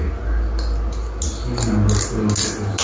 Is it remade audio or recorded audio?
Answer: recorded